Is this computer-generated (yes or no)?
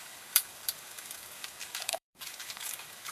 yes